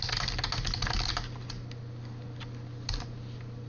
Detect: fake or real real